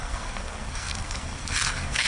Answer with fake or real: fake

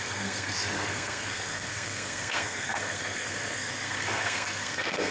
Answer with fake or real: fake